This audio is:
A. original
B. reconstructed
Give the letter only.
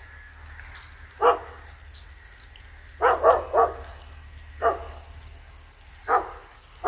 A